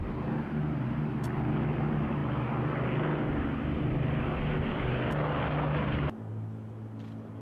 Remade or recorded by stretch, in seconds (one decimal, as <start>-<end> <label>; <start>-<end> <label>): 0.0-7.4 recorded